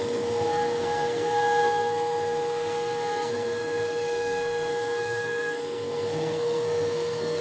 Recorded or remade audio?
remade